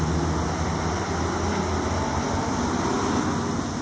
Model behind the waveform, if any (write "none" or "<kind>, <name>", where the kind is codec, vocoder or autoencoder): none